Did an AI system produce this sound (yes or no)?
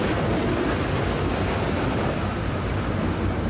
no